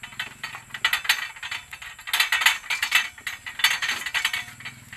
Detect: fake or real real